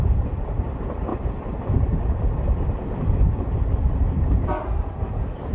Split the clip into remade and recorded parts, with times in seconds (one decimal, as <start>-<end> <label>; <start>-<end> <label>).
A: 0.0-5.5 remade